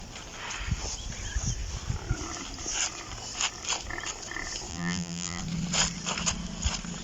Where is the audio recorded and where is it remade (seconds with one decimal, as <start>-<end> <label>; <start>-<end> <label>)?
0.0-4.7 recorded; 4.7-5.4 remade; 5.4-7.0 recorded